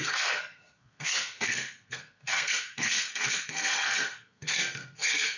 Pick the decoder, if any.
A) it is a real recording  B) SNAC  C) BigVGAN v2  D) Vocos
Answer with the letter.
B